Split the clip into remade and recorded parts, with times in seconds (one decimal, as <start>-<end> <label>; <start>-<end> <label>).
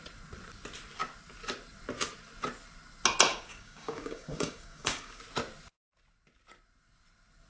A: 0.0-3.3 recorded; 3.3-5.2 remade; 5.2-7.5 recorded